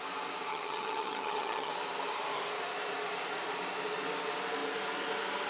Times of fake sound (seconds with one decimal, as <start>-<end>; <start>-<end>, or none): 0.5-1.7